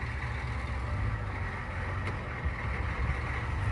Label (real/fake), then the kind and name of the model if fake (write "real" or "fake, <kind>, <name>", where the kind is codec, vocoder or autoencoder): real